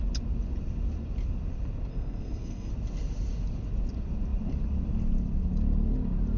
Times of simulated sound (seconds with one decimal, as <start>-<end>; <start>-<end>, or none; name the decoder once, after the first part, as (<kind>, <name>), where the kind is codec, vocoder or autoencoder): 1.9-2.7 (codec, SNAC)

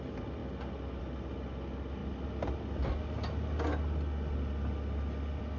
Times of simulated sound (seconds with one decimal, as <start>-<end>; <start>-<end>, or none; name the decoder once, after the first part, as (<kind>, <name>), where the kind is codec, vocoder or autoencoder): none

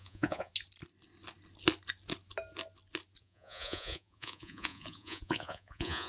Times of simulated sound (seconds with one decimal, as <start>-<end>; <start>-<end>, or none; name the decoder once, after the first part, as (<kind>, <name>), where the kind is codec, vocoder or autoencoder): 0.0-0.5 (vocoder, Vocos); 3.2-6.1

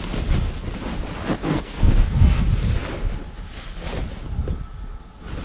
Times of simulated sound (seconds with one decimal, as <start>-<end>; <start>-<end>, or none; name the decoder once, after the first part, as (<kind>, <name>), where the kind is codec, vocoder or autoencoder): 1.4-2.4 (codec, SNAC)

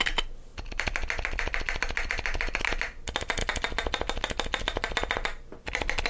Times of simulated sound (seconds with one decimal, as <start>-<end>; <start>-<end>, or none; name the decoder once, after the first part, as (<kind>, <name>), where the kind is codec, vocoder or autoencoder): none

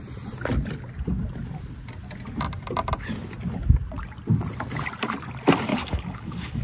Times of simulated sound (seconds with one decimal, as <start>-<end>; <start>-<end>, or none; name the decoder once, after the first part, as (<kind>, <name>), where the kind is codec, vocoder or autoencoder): 5.7-6.6 (codec, DAC)

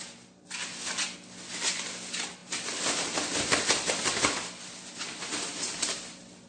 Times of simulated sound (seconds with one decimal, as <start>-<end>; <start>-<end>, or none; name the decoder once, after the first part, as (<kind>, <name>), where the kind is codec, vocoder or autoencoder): none